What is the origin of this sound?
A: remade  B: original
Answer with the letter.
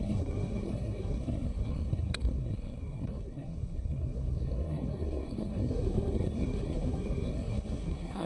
A